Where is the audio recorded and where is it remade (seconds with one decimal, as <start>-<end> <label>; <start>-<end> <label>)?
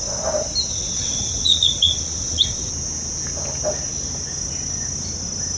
0.0-0.7 recorded; 0.7-2.7 remade; 2.7-5.6 recorded